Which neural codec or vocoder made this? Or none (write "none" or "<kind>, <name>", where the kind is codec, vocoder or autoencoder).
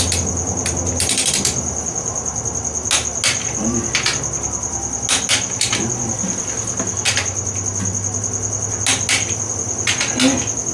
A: none